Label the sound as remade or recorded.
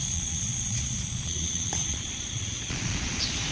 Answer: remade